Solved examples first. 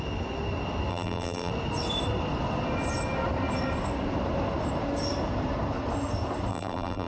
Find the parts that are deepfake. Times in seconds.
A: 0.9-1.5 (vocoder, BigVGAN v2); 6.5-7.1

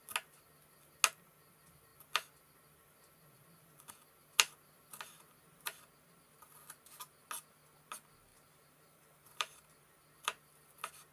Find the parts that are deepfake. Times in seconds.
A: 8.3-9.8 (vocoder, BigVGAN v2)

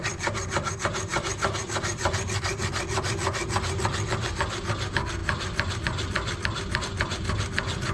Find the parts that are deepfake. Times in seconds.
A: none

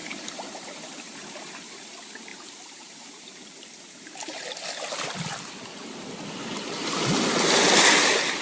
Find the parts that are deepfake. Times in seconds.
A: 0.0-1.9 (vocoder, BigVGAN v2); 2.3-4.4

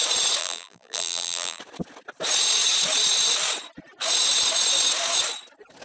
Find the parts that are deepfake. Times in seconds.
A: 0.4-1.6 (vocoder, BigVGAN v2)

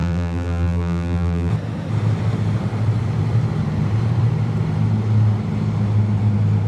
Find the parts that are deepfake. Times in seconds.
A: 0.0-1.5 (vocoder, BigVGAN v2)

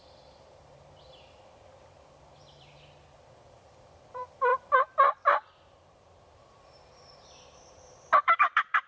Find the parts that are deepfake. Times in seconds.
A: 0.0-8.9 (vocoder, BigVGAN v2)

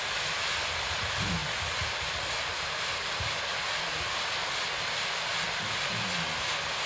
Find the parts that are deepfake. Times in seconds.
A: 1.4-3.4 (vocoder, BigVGAN v2)